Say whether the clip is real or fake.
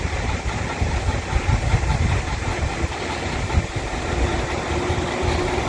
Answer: real